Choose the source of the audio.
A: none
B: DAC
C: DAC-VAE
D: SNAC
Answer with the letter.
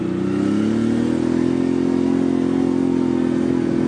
A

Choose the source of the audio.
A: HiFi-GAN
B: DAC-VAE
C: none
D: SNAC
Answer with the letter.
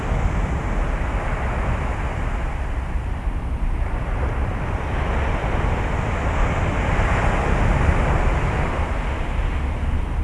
C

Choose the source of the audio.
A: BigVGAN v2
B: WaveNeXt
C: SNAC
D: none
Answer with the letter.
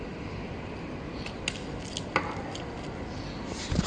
D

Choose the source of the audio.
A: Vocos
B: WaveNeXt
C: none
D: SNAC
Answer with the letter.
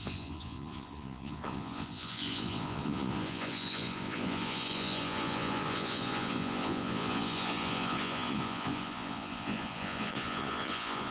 A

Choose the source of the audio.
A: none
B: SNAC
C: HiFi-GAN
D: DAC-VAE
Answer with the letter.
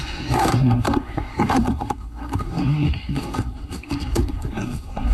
B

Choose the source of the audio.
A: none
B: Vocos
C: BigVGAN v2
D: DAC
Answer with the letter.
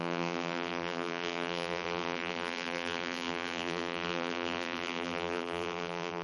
C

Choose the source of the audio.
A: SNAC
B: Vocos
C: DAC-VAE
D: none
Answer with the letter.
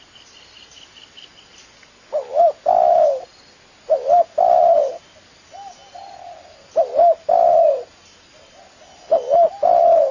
D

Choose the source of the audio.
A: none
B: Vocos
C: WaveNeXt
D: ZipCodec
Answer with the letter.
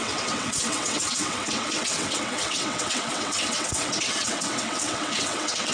C